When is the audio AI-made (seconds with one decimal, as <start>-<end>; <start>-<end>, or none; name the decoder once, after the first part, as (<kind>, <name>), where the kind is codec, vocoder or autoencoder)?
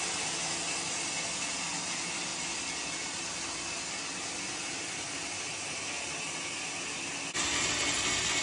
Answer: none